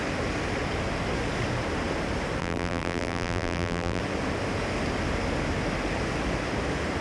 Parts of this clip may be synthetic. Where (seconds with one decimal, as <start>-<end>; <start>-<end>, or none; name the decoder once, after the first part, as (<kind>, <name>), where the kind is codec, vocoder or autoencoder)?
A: 2.4-4.0 (vocoder, BigVGAN v2)